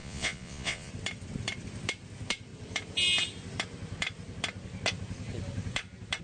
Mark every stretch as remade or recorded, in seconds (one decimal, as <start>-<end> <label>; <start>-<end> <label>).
0.0-0.9 remade; 0.9-6.2 recorded